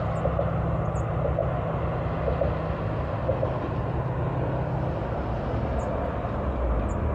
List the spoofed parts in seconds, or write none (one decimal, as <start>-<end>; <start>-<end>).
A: none